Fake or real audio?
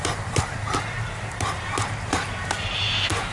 fake